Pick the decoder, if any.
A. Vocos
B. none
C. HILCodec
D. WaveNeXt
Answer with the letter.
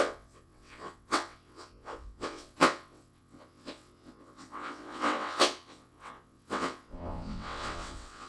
D